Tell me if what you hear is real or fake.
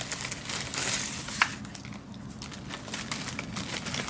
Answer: real